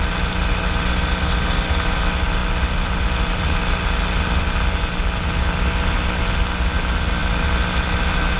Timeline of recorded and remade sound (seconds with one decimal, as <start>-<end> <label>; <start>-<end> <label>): 0.0-8.4 recorded